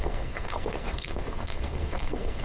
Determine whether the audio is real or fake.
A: fake